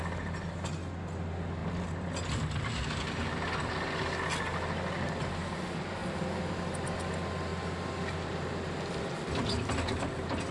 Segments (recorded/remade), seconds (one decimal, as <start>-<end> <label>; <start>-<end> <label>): 0.0-10.5 recorded